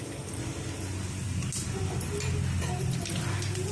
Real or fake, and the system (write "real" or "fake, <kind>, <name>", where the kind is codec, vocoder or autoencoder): real